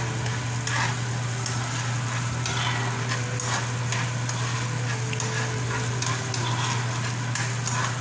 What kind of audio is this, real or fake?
real